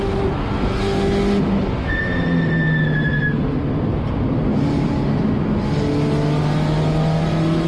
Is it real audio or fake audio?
real